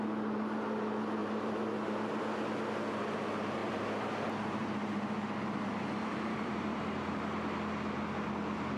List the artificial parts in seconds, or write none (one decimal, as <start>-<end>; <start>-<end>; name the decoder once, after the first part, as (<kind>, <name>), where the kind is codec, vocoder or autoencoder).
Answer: 1.2-2.2 (vocoder, BigVGAN v2); 3.6-7.2